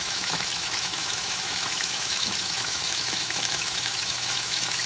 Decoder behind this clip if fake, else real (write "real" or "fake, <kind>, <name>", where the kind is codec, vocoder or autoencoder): fake, autoencoder, DAC-VAE